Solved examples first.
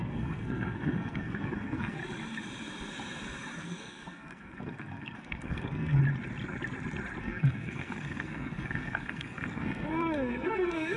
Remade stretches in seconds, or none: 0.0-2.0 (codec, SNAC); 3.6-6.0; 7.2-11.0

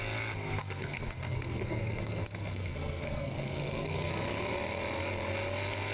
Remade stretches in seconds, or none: 0.6-4.1 (codec, SNAC)